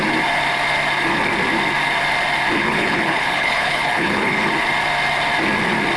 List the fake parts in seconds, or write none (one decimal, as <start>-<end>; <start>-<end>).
2.6-4.5